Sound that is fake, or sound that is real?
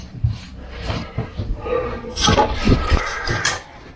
fake